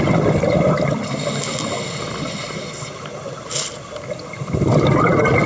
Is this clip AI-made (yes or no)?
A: no